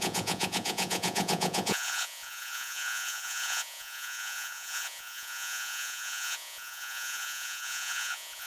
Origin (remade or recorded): remade